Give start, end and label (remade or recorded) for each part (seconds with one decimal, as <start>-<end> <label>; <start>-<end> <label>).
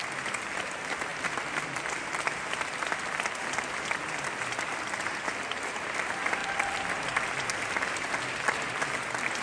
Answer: 0.0-6.4 recorded; 6.4-6.9 remade; 6.9-9.4 recorded